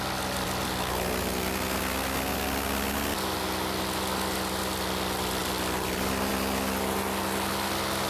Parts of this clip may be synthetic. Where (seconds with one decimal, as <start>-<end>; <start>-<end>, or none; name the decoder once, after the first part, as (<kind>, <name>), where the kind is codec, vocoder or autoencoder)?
none